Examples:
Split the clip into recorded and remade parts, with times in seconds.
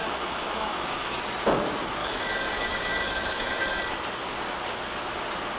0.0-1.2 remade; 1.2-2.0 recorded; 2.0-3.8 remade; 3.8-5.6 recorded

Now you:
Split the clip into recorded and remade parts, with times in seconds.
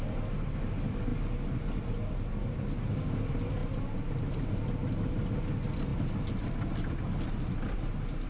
0.0-8.3 recorded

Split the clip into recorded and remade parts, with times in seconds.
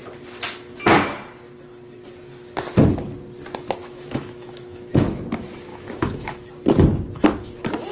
0.0-3.8 recorded; 3.8-5.2 remade; 5.2-5.7 recorded; 5.7-6.5 remade; 6.5-7.9 recorded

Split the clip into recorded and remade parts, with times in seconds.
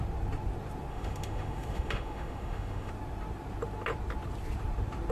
0.0-0.9 recorded; 0.9-2.9 remade; 2.9-5.1 recorded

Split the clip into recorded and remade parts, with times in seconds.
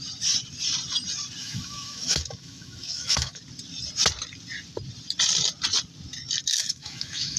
0.0-1.4 recorded; 1.4-3.4 remade; 3.4-6.6 recorded; 6.6-7.4 remade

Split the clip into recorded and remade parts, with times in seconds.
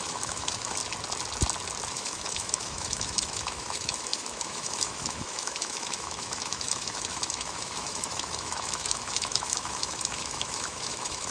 0.0-0.8 remade; 0.8-1.9 recorded; 1.9-11.3 remade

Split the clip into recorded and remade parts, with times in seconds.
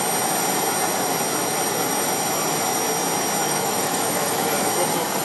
0.0-3.4 recorded; 3.4-4.7 remade; 4.7-5.2 recorded